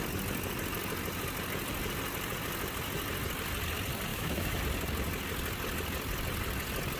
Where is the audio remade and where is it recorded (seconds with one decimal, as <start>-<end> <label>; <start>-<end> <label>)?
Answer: 0.0-4.1 recorded; 4.1-4.6 remade; 4.6-7.0 recorded